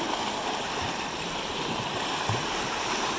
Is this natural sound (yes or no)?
yes